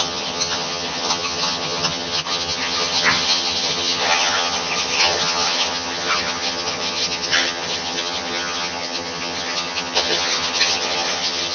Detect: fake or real fake